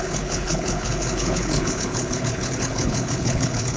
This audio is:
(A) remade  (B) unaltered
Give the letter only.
A